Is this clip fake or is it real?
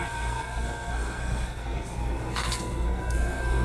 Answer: fake